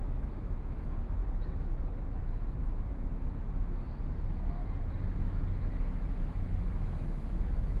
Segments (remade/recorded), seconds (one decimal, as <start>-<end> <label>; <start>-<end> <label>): 0.0-1.2 remade; 1.2-2.2 recorded; 2.2-4.6 remade; 4.6-5.2 recorded; 5.2-7.8 remade